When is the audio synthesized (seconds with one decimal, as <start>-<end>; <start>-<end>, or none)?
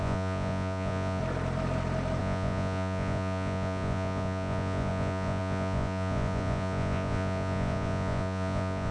0.0-1.2; 2.2-8.9